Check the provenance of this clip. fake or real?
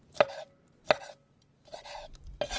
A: real